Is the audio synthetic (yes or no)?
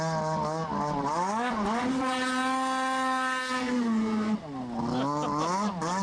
no